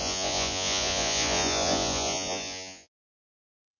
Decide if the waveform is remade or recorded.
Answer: remade